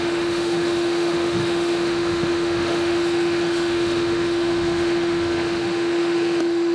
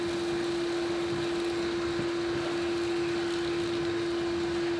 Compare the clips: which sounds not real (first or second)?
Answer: first